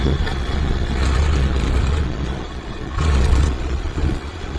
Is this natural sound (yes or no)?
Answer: no